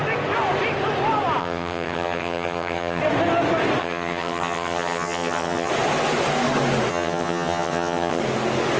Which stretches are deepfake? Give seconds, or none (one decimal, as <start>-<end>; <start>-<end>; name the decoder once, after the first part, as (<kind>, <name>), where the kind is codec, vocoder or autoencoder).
1.4-3.0 (vocoder, HiFi-GAN); 3.8-5.7; 6.9-8.2